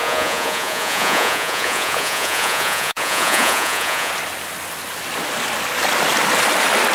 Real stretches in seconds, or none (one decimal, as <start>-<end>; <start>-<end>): 4.1-6.9